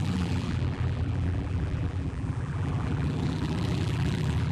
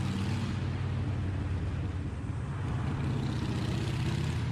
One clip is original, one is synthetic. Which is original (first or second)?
second